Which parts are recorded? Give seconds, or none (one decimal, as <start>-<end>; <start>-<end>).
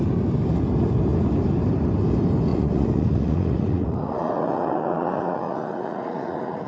0.0-2.5